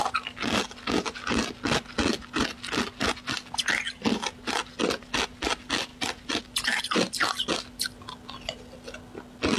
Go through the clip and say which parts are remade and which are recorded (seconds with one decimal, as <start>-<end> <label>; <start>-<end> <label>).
0.0-9.6 recorded